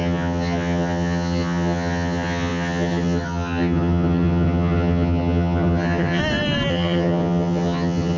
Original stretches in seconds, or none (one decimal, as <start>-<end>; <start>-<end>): 6.2-6.7